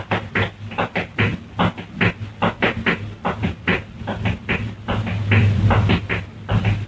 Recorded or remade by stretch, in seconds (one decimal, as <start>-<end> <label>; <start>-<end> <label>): 0.0-1.3 remade; 1.3-2.4 recorded; 2.4-6.9 remade